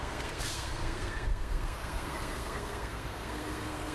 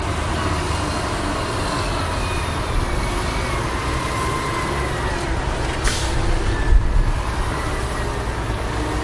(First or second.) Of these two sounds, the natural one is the second